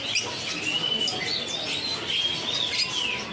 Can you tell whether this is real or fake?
real